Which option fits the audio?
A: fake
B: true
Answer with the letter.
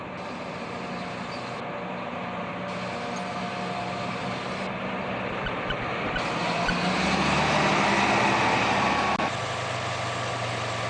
B